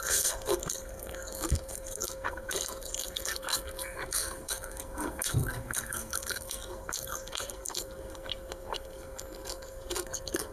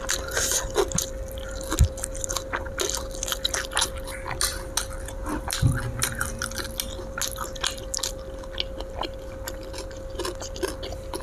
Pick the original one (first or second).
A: second